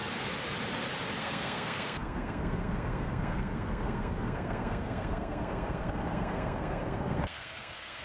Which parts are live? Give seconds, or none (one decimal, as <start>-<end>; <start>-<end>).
0.0-1.2